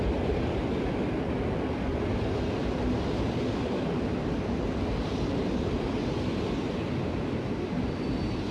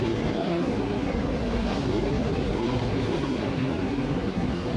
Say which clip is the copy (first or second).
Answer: second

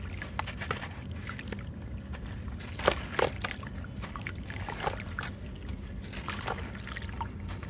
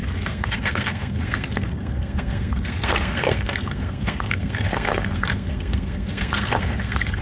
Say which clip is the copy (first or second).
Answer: second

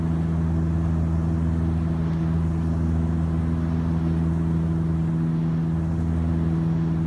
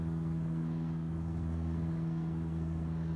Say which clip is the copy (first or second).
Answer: second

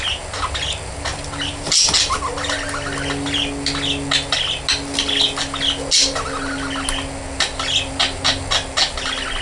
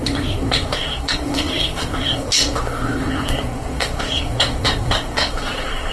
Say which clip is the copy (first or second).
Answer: second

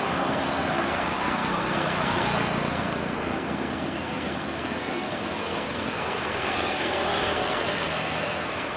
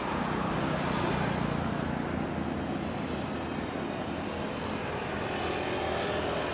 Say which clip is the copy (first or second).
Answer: first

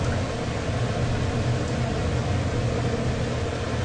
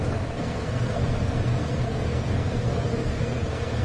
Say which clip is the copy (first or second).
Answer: second